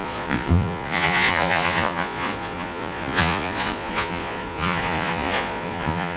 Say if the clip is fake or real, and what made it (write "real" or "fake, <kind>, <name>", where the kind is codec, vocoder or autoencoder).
fake, vocoder, Vocos